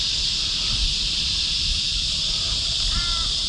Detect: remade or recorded recorded